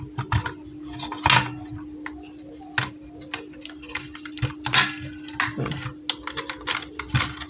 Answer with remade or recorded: recorded